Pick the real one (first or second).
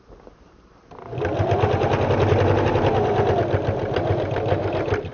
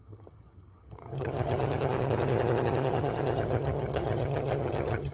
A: first